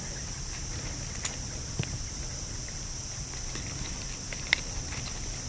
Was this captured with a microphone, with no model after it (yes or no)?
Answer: yes